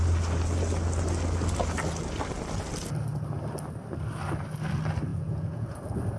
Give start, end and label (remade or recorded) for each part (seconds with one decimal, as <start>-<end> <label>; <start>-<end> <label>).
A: 0.0-5.1 recorded; 5.1-5.8 remade; 5.8-6.2 recorded